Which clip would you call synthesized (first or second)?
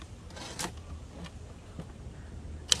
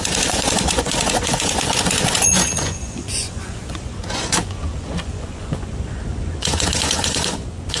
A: second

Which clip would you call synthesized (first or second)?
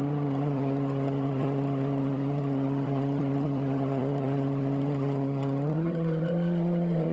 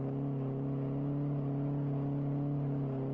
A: first